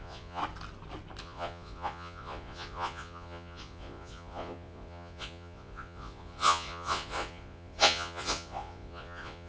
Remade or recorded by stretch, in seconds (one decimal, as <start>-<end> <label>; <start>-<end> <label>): 0.0-0.4 remade; 0.4-1.2 recorded; 1.2-9.5 remade